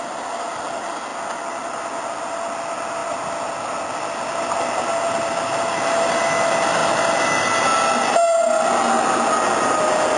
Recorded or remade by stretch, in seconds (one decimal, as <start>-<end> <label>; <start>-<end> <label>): 0.0-10.2 recorded